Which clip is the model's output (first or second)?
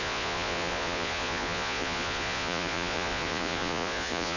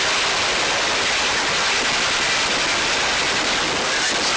first